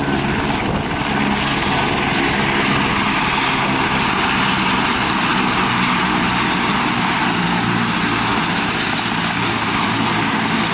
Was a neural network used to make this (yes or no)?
no